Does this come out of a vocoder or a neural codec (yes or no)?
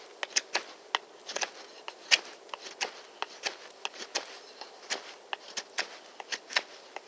no